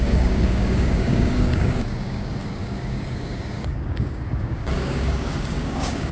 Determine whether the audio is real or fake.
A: fake